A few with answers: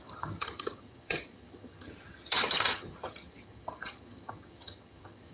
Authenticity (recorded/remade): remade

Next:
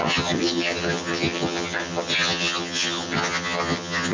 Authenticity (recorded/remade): remade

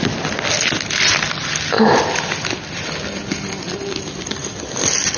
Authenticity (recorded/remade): recorded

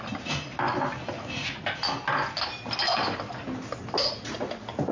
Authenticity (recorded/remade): recorded